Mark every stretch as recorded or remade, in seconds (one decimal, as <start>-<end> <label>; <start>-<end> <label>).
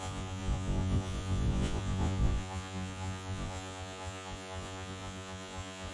0.0-5.9 remade